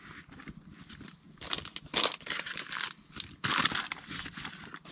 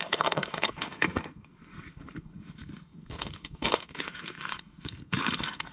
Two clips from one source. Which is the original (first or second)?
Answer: first